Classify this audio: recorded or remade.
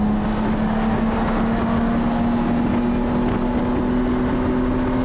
recorded